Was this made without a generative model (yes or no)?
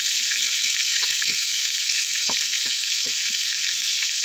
no